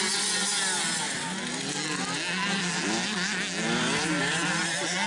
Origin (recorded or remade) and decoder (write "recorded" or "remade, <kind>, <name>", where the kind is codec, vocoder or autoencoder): recorded